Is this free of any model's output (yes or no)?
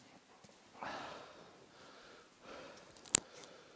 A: yes